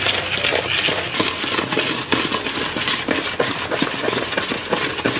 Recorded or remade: recorded